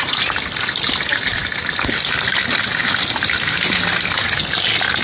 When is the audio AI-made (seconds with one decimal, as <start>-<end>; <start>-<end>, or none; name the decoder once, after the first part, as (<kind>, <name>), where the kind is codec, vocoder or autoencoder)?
none